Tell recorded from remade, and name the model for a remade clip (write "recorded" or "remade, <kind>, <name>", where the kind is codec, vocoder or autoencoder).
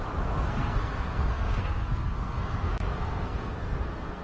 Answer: remade, codec, SNAC